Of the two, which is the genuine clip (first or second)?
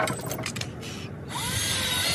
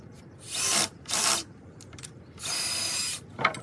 first